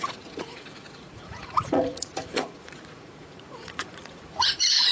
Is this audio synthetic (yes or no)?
yes